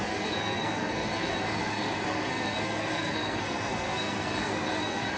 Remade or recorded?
remade